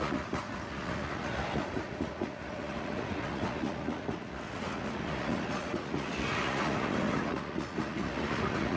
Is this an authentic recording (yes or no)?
no